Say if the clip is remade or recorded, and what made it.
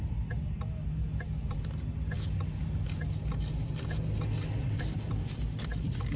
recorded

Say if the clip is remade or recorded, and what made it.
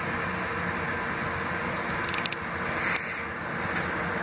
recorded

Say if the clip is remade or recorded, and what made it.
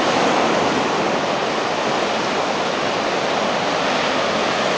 recorded